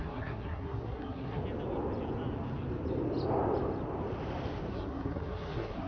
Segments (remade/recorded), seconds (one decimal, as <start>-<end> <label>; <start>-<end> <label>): 0.0-1.4 remade; 1.4-4.7 recorded; 4.7-5.9 remade